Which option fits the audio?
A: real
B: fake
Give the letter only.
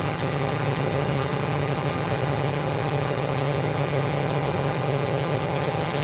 B